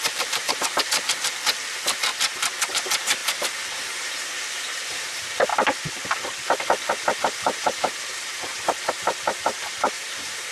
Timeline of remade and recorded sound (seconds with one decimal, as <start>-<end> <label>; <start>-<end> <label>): 0.0-2.1 remade; 2.1-2.7 recorded; 2.7-3.2 remade; 3.2-3.8 recorded; 3.8-5.5 remade; 5.5-7.2 recorded; 7.2-10.5 remade